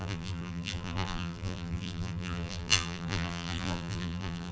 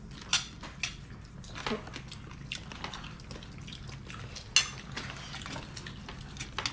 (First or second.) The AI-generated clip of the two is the first